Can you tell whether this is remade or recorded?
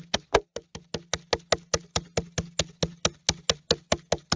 recorded